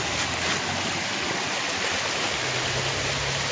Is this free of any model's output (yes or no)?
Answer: yes